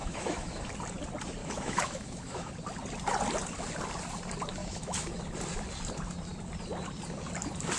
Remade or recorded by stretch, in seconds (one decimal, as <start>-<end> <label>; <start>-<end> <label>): 0.0-0.7 remade; 0.7-1.4 recorded; 1.4-2.5 remade; 2.5-4.6 recorded; 4.6-5.2 remade; 5.2-7.8 recorded